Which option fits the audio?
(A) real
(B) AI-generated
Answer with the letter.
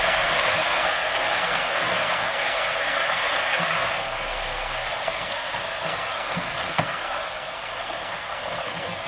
B